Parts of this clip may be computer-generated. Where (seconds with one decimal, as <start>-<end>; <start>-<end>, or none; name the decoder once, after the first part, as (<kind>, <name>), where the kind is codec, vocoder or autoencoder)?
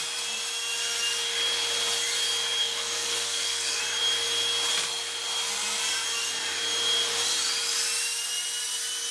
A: 2.6-3.8 (codec, SNAC)